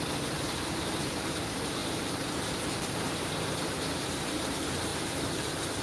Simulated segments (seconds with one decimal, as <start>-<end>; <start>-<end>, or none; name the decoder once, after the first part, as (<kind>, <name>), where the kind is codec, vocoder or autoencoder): 0.0-4.9 (vocoder, BigVGAN v2)